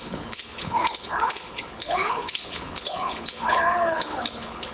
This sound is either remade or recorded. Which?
remade